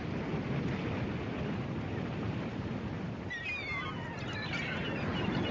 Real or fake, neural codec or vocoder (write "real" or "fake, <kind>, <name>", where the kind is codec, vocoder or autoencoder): real